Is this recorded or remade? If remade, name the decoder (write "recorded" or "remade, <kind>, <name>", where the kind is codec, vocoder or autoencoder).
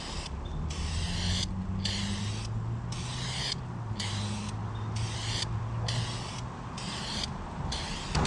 recorded